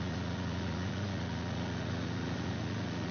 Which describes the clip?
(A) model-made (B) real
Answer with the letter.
A